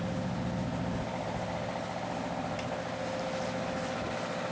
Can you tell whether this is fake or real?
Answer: real